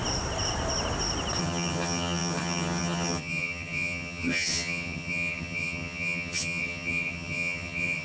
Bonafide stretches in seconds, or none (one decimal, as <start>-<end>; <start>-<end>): 0.0-1.4